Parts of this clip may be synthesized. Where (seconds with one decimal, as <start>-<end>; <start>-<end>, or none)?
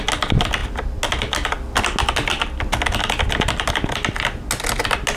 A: none